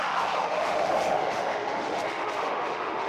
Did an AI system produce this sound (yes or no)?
yes